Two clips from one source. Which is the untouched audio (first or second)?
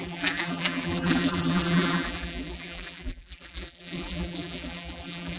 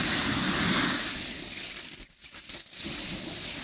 second